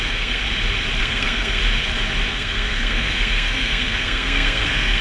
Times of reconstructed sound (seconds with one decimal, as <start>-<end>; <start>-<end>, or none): 0.0-0.4; 1.0-1.6; 2.3-5.0